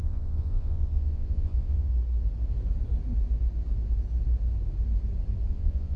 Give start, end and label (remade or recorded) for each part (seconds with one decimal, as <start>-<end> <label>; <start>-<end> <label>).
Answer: 0.0-1.9 remade; 1.9-5.5 recorded; 5.5-6.0 remade